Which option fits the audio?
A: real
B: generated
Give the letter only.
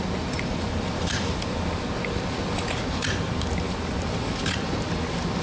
A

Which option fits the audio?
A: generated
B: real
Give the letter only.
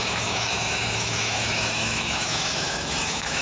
A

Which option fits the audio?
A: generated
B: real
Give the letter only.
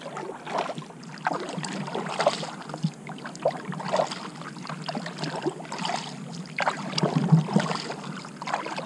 B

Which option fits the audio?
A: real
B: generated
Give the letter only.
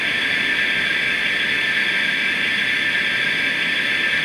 A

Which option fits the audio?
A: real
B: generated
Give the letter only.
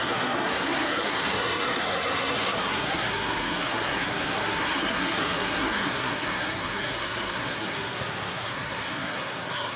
B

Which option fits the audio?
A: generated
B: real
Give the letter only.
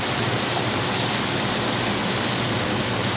B